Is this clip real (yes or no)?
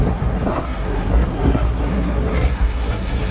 no